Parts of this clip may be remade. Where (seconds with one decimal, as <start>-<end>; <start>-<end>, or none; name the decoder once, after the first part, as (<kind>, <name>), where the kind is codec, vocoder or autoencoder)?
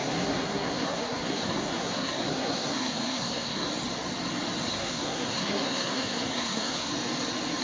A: 0.0-3.7 (codec, SNAC); 4.7-6.9